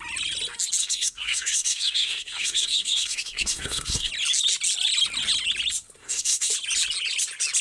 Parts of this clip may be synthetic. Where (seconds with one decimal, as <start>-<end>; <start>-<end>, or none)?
0.8-4.1; 6.0-6.5